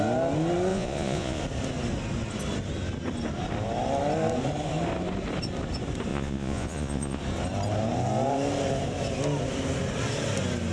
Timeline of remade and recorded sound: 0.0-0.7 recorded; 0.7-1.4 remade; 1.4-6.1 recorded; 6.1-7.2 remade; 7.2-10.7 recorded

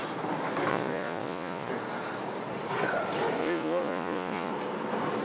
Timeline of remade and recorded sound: 0.0-0.7 recorded; 0.7-1.7 remade; 1.7-3.4 recorded; 3.4-4.5 remade; 4.5-5.2 recorded

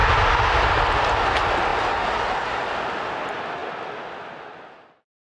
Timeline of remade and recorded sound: 0.0-5.3 recorded

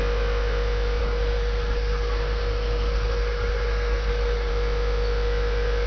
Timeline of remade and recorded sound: 0.0-1.0 recorded; 1.0-4.5 remade; 4.5-5.9 recorded